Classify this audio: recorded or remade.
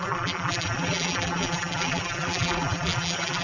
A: remade